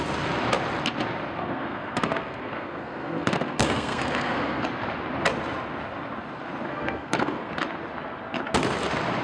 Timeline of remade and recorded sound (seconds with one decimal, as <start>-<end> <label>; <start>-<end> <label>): 0.0-1.4 recorded; 1.4-4.6 remade; 4.6-6.7 recorded; 6.7-7.5 remade; 7.5-9.2 recorded